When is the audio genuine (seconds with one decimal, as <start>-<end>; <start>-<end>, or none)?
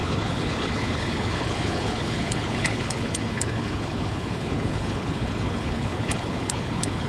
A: none